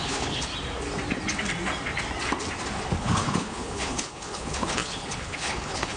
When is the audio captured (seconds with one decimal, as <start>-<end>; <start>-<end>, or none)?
0.5-3.0